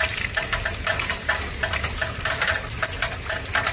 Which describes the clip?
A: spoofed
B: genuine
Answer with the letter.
B